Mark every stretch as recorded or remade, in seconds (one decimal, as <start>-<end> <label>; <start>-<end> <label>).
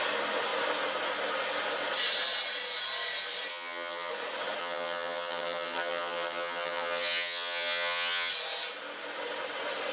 0.0-3.5 recorded; 3.5-4.1 remade; 4.1-4.6 recorded; 4.6-8.3 remade; 8.3-9.9 recorded